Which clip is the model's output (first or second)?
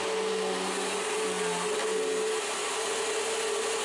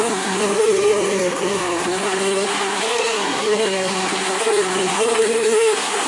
second